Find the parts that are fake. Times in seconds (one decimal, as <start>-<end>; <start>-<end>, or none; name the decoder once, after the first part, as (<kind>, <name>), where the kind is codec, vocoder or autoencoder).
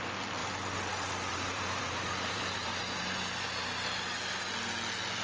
1.3-4.4 (vocoder, BigVGAN v2)